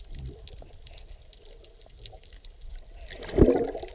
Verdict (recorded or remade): recorded